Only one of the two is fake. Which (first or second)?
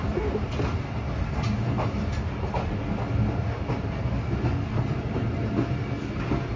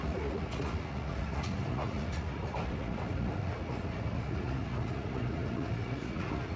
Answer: second